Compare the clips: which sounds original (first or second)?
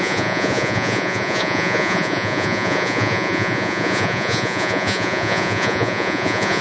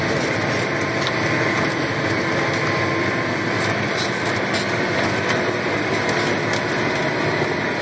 second